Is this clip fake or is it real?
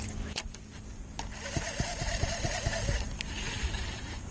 real